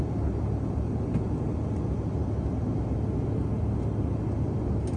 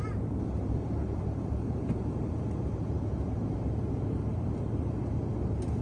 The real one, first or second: first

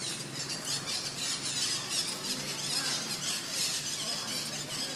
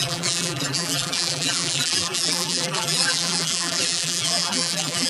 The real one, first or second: first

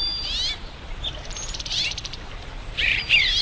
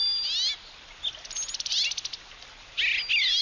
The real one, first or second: second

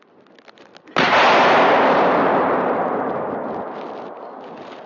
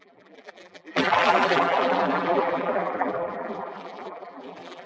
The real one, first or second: first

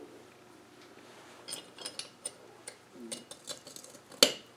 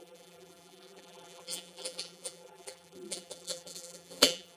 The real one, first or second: first